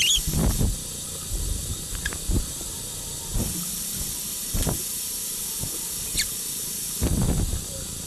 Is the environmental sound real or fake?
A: real